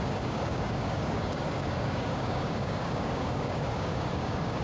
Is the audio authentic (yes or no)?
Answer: no